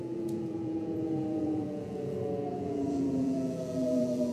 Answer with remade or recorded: remade